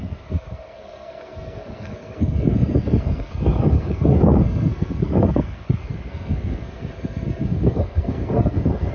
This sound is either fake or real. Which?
fake